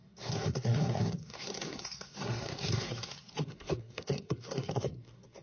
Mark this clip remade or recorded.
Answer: remade